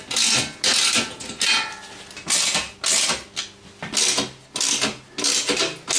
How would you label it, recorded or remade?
recorded